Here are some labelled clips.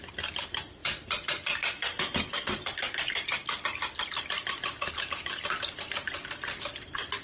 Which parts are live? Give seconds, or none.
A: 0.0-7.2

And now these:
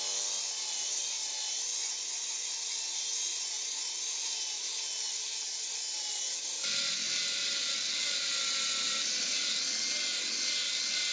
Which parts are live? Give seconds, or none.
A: 0.0-1.8; 2.5-3.3; 3.9-11.1

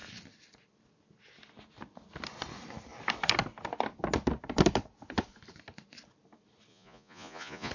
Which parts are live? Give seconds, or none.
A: 0.0-6.7

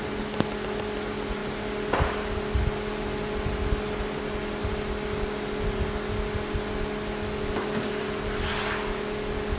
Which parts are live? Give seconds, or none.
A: 0.0-9.6

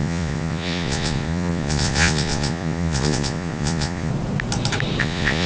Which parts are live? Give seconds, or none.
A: 4.1-5.0

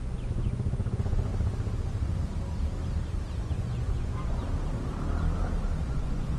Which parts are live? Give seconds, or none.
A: 1.3-3.4; 4.4-5.8

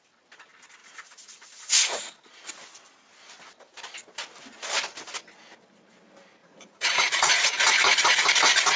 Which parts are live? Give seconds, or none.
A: 0.0-0.8; 2.0-6.4; 7.8-8.8

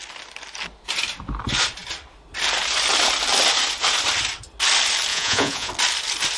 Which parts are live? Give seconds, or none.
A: 0.0-5.1; 5.7-6.4